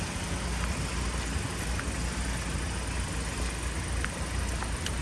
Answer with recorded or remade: recorded